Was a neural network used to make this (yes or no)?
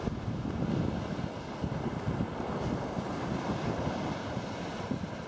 no